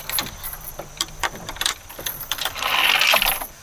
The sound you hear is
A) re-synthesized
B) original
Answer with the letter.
A